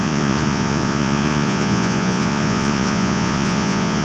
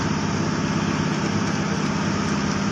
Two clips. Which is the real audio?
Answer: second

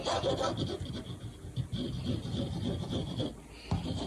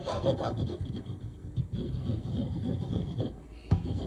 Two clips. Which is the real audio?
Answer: first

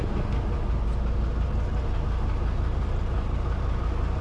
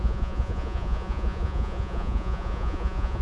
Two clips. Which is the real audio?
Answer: first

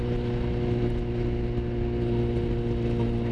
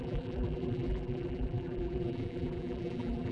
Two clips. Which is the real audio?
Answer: first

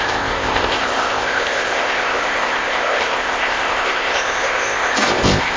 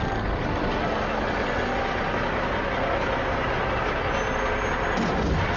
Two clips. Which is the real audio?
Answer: second